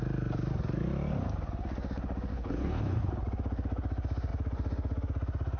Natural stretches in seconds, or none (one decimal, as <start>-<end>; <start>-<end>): 0.0-2.3; 3.2-5.6

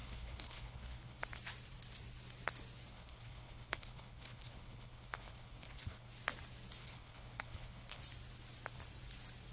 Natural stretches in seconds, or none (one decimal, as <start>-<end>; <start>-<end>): 1.2-2.9; 6.1-6.8; 8.0-9.5